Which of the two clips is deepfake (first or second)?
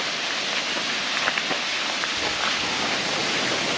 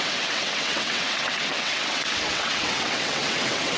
second